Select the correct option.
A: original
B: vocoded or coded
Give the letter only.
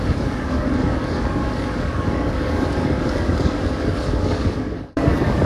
B